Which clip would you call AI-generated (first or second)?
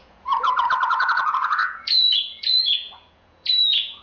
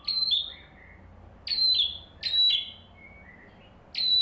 first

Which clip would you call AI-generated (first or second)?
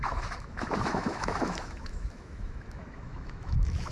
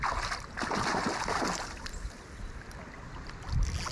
first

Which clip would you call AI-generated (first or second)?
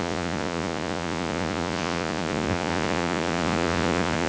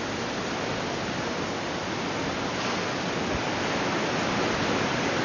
first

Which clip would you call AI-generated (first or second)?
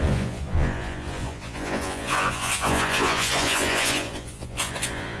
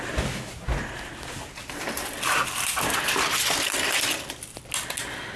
first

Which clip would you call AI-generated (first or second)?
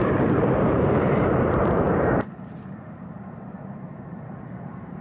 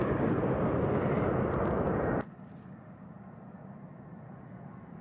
first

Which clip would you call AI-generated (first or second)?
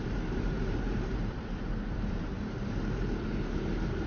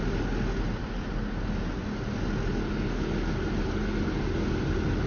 first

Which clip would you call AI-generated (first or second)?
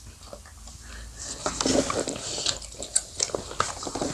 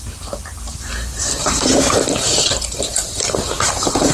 second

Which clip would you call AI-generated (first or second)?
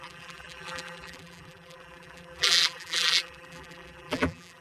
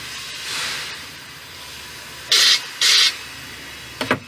first